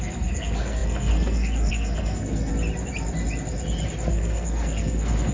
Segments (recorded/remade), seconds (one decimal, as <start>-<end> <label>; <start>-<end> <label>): 0.0-2.5 remade; 2.5-4.1 recorded; 4.1-5.3 remade